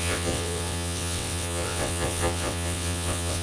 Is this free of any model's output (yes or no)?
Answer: no